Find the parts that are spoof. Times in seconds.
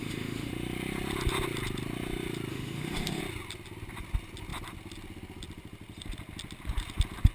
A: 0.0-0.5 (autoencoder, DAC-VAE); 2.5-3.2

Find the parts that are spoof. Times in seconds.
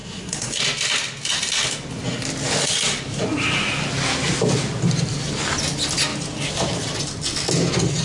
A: 0.0-0.6 (codec, SNAC)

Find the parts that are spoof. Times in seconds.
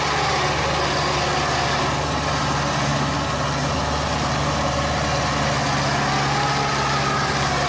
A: none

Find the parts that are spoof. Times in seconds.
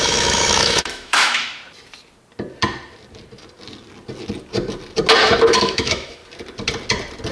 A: 0.0-1.6 (autoencoder, DAC-VAE); 5.2-6.2